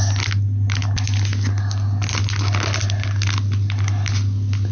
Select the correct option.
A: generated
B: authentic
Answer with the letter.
B